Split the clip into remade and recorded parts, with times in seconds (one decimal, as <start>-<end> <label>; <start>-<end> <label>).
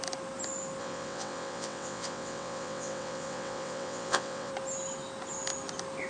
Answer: 0.0-0.8 recorded; 0.8-4.5 remade; 4.5-6.1 recorded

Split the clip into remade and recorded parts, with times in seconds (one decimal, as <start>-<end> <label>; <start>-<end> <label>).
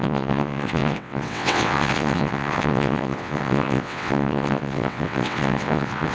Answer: 0.0-6.1 remade